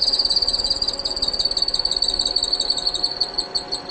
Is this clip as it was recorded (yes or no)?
yes